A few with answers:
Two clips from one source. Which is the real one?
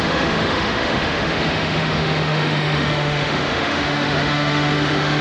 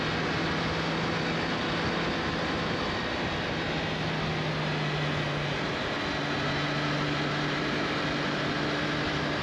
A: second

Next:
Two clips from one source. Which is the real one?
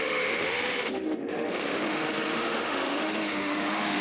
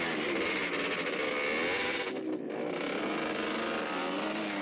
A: second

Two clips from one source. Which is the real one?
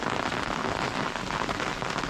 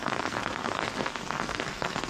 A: first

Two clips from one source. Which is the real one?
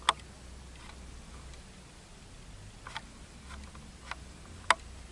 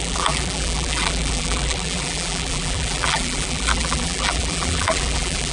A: first